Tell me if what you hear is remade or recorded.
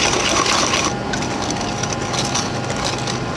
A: recorded